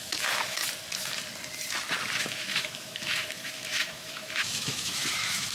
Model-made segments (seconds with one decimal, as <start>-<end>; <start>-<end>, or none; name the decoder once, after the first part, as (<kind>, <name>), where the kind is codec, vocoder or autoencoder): 0.0-0.6 (autoencoder, DAC-VAE); 2.2-5.5